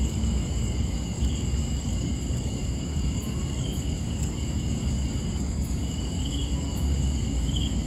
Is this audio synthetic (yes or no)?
yes